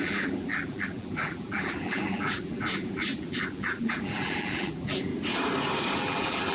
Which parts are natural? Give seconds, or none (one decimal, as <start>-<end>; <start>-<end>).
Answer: 5.1-6.0